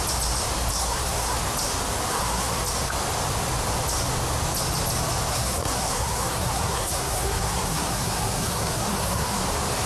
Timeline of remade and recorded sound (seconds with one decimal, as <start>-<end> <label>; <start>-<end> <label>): 0.0-0.7 recorded; 0.7-1.4 remade; 1.4-2.1 recorded; 2.1-2.6 remade; 2.6-5.3 recorded; 5.3-9.4 remade; 9.4-9.9 recorded